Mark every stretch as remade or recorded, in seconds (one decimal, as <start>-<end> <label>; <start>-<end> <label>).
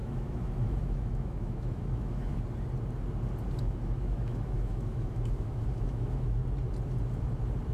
0.0-2.3 remade; 2.3-3.6 recorded; 3.6-6.4 remade; 6.4-7.7 recorded